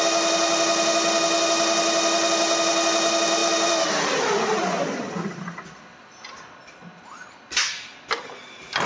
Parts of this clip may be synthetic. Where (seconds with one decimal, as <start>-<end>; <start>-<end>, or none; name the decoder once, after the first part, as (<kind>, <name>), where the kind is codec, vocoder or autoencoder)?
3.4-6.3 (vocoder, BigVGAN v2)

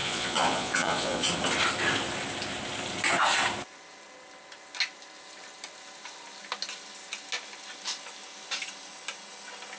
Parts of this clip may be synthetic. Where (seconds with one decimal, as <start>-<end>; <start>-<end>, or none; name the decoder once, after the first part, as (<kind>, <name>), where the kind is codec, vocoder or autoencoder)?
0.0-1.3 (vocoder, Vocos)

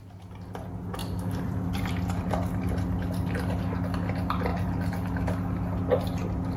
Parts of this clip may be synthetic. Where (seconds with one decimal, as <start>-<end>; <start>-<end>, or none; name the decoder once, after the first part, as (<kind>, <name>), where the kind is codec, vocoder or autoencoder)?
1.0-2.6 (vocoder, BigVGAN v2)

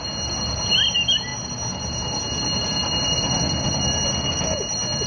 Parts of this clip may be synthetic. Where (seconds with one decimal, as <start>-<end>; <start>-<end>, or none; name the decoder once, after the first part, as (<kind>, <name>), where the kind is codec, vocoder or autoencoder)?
none

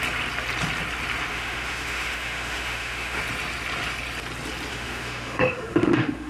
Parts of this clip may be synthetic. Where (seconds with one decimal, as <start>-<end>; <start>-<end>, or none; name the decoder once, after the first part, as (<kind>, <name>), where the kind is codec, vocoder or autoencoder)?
1.3-3.2 (autoencoder, DAC-VAE); 4.7-6.3

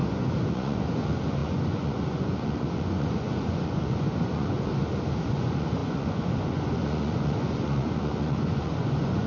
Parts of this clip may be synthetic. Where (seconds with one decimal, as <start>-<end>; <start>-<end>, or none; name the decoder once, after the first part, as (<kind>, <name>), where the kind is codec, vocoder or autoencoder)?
0.0-4.7 (vocoder, Vocos); 5.3-9.3

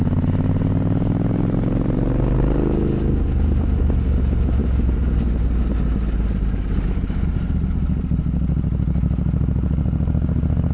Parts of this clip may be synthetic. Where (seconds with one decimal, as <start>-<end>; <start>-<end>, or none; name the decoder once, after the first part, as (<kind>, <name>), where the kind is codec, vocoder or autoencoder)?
none

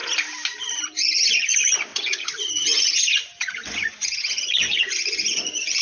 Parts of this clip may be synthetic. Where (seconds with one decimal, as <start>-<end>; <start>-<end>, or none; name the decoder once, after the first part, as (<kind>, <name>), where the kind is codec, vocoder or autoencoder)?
1.9-5.8 (vocoder, Vocos)